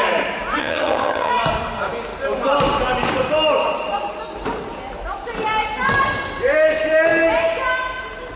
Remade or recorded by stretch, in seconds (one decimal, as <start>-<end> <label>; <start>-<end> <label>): 0.0-0.6 recorded; 0.6-1.3 remade; 1.3-8.4 recorded